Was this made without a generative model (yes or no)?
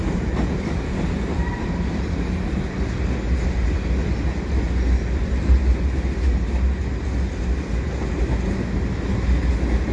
yes